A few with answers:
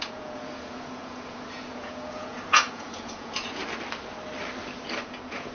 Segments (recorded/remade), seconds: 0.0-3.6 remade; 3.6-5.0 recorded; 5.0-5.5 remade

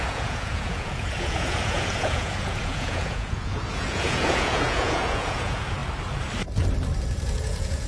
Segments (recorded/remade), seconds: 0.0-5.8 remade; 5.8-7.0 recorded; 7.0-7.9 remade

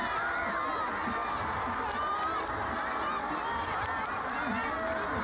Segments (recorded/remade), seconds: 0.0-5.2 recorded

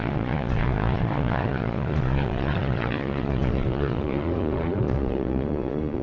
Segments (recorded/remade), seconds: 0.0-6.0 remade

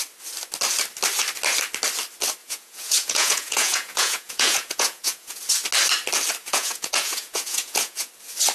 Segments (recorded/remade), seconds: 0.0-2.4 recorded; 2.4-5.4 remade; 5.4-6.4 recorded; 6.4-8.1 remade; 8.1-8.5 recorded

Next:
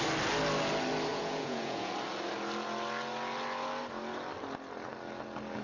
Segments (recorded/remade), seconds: 0.0-1.1 recorded; 1.1-1.9 remade; 1.9-5.6 recorded

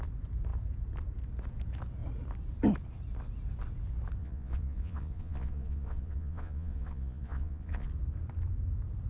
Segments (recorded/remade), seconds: 0.0-4.2 recorded; 4.2-7.9 remade; 7.9-9.1 recorded